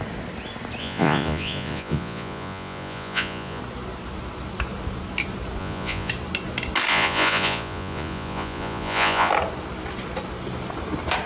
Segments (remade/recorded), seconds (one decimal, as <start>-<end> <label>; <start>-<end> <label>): 0.0-0.8 recorded; 0.8-3.6 remade; 3.6-5.6 recorded; 5.6-6.1 remade; 6.1-6.9 recorded; 6.9-9.3 remade; 9.3-11.3 recorded